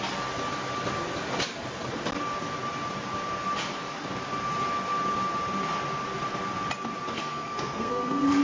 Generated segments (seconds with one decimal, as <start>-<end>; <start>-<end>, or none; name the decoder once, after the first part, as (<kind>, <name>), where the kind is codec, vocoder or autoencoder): 7.2-8.4 (codec, SNAC)